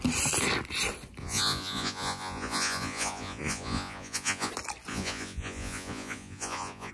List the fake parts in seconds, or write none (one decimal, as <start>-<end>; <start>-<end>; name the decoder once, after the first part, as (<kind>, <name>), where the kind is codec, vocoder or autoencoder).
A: 1.2-4.5 (vocoder, Vocos); 4.9-6.9